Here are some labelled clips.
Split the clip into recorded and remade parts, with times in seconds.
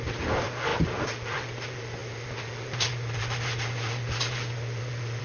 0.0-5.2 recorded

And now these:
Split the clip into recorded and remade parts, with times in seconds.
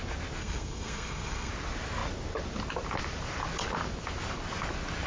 0.0-0.4 recorded; 0.4-1.5 remade; 1.5-5.1 recorded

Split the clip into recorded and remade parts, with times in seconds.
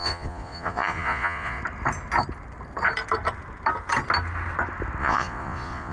0.0-1.6 remade; 1.6-5.0 recorded; 5.0-5.9 remade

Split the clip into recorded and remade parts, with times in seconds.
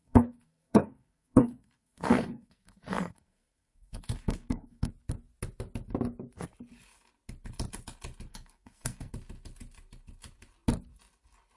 0.0-4.9 remade; 4.9-8.3 recorded; 8.3-9.1 remade; 9.1-11.6 recorded